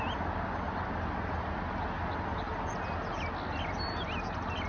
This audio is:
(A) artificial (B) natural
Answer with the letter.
B